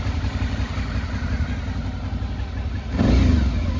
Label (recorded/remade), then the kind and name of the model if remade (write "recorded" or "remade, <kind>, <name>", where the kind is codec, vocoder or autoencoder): recorded